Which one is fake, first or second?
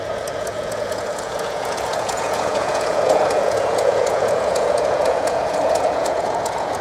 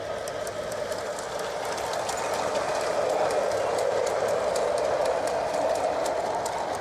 first